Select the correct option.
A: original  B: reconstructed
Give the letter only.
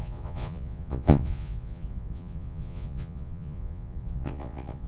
B